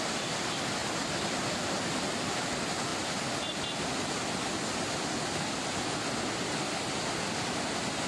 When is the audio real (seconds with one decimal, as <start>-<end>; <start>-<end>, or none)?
0.0-8.1